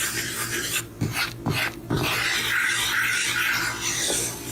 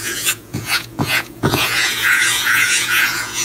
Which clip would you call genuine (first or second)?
first